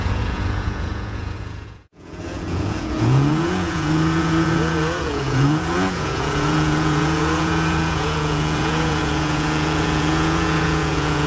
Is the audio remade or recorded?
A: remade